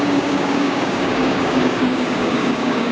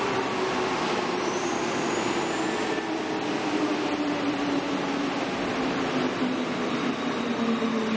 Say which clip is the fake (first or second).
first